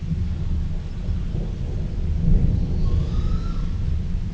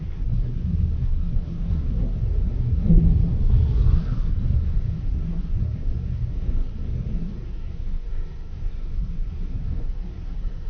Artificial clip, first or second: second